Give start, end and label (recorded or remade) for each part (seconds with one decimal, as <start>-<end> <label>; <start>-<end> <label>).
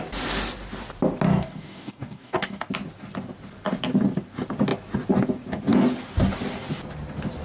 0.0-1.3 recorded; 1.3-2.7 remade; 2.7-7.4 recorded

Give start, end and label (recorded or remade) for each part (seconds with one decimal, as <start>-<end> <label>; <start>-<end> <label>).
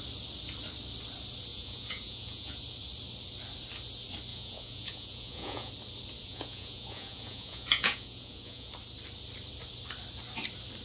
0.0-1.5 recorded; 1.5-2.6 remade; 2.6-4.3 recorded; 4.3-5.7 remade; 5.7-6.2 recorded; 6.2-8.7 remade; 8.7-10.8 recorded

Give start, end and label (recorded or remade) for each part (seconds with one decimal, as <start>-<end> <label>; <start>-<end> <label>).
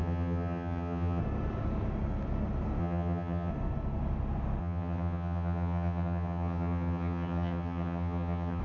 0.0-1.2 remade; 1.2-2.8 recorded; 2.8-3.5 remade; 3.5-4.6 recorded; 4.6-8.6 remade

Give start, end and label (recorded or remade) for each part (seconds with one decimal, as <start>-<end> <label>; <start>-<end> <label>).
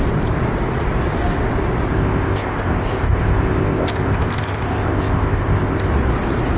0.0-1.9 recorded; 1.9-5.9 remade; 5.9-6.6 recorded